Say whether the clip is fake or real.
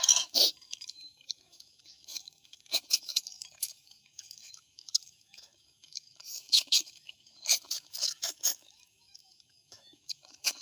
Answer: fake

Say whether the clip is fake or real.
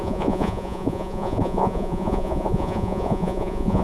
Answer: fake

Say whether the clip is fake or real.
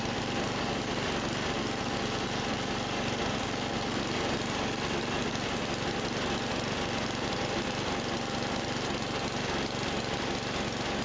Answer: real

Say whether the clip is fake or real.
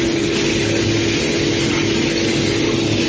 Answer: real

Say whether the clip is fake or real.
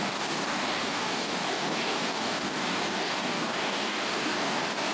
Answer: fake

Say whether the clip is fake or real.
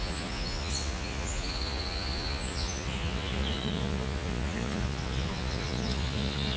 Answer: fake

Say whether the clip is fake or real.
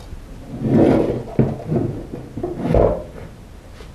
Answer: real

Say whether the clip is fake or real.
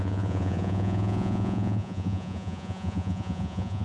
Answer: fake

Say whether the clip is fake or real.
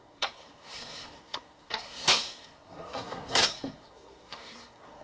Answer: fake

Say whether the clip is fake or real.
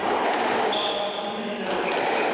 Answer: fake